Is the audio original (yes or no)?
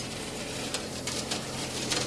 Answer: no